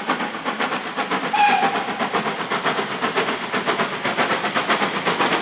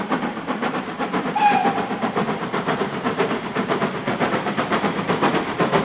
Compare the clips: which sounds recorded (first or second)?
first